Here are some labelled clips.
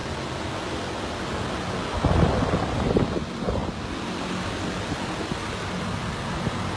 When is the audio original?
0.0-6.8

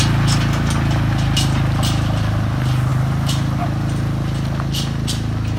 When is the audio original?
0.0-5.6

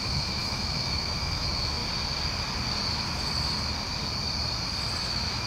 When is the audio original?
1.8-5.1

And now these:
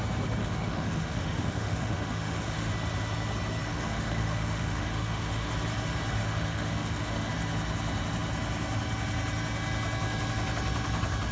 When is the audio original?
0.0-0.4; 2.7-3.7; 5.5-6.2; 7.3-11.3

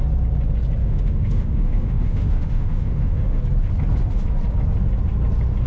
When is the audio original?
0.0-0.8; 3.4-5.7

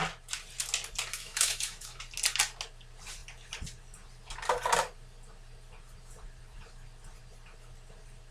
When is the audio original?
0.0-1.1; 2.0-8.3